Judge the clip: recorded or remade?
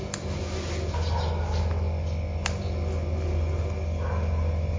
recorded